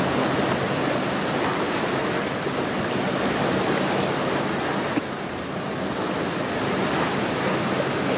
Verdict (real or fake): real